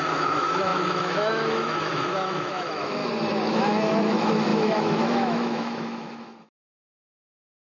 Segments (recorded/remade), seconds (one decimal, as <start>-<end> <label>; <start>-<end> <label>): 0.0-3.0 remade; 3.0-3.5 recorded; 3.5-7.8 remade